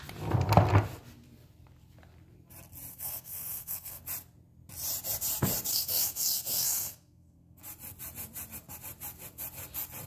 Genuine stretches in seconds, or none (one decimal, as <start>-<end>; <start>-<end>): 0.0-2.9; 4.0-5.7; 7.6-10.1